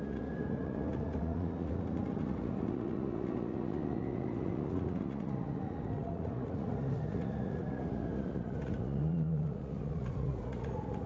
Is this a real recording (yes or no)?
no